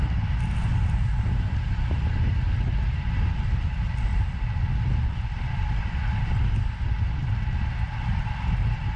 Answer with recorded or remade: recorded